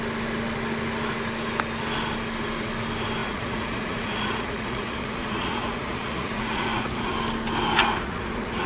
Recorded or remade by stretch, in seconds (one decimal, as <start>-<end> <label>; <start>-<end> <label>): 0.0-3.2 recorded; 3.2-7.1 remade; 7.1-7.8 recorded; 7.8-8.7 remade